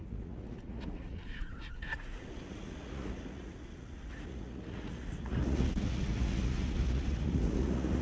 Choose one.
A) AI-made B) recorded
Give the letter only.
A